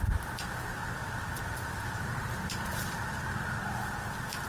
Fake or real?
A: fake